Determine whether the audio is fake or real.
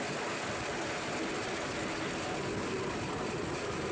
real